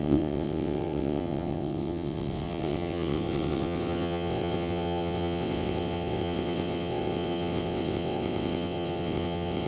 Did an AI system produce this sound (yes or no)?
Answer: yes